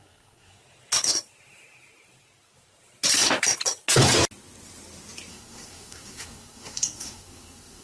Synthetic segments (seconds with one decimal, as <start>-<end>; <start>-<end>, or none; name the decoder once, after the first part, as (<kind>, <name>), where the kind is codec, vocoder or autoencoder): 0.0-0.6 (codec, SNAC); 5.3-7.8